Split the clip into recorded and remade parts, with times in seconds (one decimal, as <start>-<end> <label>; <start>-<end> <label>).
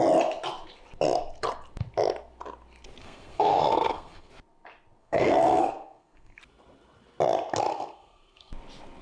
0.0-3.0 recorded; 3.0-4.3 remade; 4.3-5.0 recorded; 5.0-6.4 remade; 6.4-7.7 recorded; 7.7-8.5 remade; 8.5-9.0 recorded